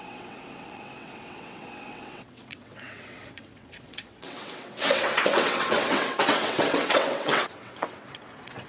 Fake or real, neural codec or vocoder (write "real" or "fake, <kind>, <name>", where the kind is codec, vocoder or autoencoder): fake, vocoder, WaveNeXt